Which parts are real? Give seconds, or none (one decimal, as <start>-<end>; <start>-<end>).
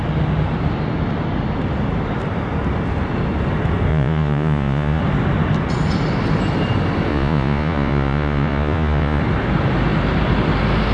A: 0.0-3.9; 5.0-7.1; 9.2-10.9